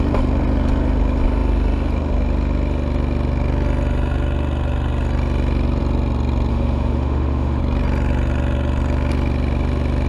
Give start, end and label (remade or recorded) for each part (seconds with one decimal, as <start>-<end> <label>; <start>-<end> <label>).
0.0-6.5 recorded; 6.5-7.6 remade; 7.6-10.1 recorded